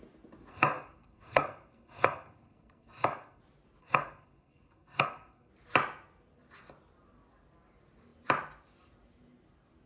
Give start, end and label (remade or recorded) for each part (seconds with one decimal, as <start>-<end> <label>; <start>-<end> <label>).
0.0-0.5 recorded; 0.5-3.4 remade; 3.4-3.8 recorded; 3.8-5.5 remade; 5.5-9.9 recorded